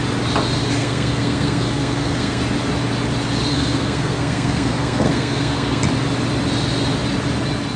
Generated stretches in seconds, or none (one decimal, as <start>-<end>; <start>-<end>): 0.8-2.4; 3.5-5.8